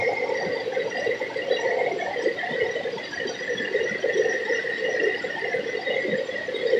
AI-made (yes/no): no